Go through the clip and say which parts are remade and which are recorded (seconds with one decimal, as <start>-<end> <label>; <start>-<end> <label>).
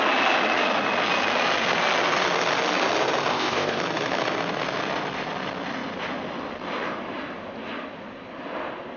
0.0-3.3 recorded; 3.3-3.8 remade; 3.8-9.0 recorded